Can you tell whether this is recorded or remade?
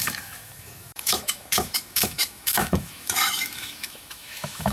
remade